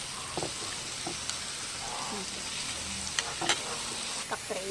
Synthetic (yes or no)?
no